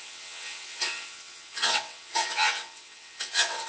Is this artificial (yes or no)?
yes